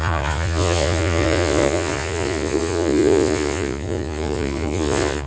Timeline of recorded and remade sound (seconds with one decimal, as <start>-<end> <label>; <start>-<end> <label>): 0.0-5.3 remade